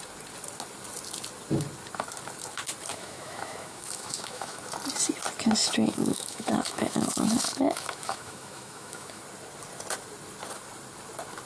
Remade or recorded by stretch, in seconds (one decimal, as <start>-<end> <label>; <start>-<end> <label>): 0.0-2.9 recorded; 2.9-4.6 remade; 4.6-5.6 recorded; 5.6-9.2 remade; 9.2-11.5 recorded